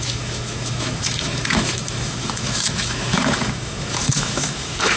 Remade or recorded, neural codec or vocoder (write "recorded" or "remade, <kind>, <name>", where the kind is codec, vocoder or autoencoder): remade, autoencoder, DAC-VAE